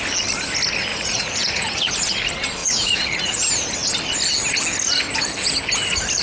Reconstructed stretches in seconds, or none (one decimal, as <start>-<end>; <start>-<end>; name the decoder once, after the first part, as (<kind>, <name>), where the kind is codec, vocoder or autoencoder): 0.9-2.1 (vocoder, Vocos); 2.6-3.4